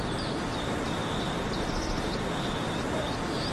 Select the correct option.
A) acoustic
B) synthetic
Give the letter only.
A